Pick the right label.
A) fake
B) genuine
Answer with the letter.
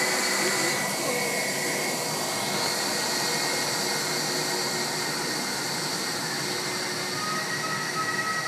B